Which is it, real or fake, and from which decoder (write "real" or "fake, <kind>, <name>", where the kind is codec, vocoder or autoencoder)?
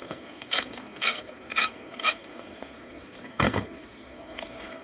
fake, codec, SNAC